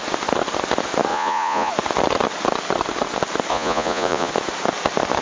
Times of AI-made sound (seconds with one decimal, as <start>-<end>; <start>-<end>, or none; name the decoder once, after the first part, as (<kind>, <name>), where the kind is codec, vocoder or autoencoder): 1.1-1.7 (vocoder, Vocos); 3.5-4.3